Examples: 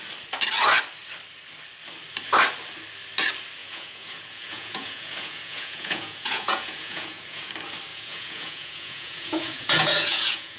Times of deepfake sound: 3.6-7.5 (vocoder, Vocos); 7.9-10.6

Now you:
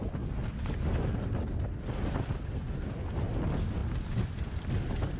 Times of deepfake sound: none

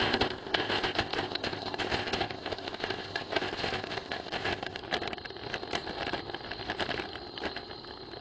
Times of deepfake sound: 0.0-4.8 (codec, ZipCodec)

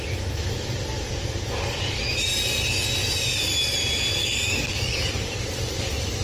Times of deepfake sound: 4.2-5.1 (codec, DAC)

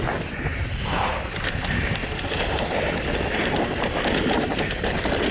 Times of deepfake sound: none

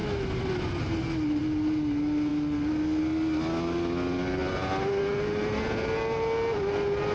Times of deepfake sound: none